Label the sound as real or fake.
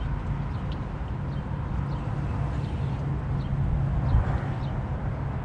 real